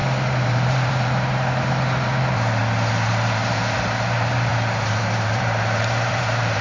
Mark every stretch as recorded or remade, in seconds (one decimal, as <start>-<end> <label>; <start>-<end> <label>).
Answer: 0.0-2.6 remade; 2.6-3.1 recorded; 3.1-6.6 remade